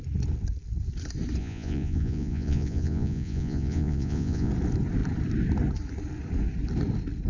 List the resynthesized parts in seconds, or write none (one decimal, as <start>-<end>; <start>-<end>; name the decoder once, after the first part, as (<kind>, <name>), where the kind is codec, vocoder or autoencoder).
1.4-4.5 (vocoder, Vocos)